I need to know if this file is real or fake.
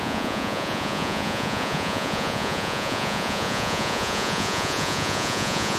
fake